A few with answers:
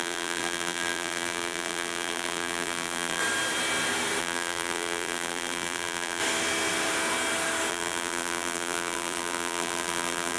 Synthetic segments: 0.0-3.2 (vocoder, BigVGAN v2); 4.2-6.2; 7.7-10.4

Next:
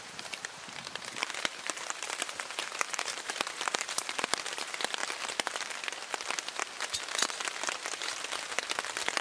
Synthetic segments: 0.0-5.0 (vocoder, BigVGAN v2)

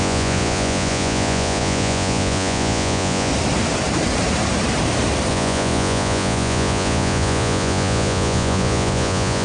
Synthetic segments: 0.0-3.3 (vocoder, Vocos); 5.3-9.4

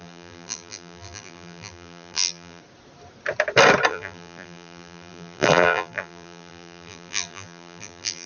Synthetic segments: 0.0-2.6 (vocoder, BigVGAN v2); 3.9-8.3

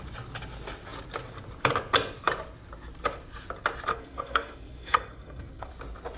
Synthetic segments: 3.9-5.7 (codec, SNAC)

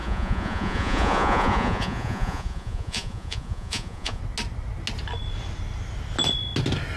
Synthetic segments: 0.0-4.2 (vocoder, Vocos)

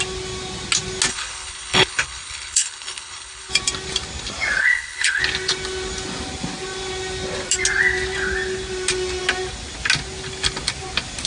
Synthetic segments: 1.1-3.5 (codec, HILCodec); 4.6-5.2